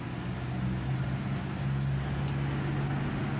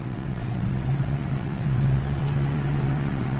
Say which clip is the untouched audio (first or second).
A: first